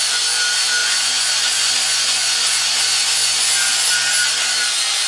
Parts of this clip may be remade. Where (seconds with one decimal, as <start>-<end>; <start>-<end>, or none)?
0.8-3.9